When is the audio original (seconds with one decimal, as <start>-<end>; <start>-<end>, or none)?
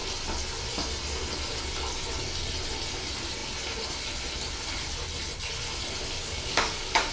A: 0.0-6.2